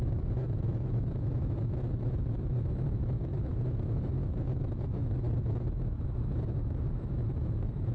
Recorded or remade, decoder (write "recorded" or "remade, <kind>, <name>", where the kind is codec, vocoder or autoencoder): remade, autoencoder, DAC-VAE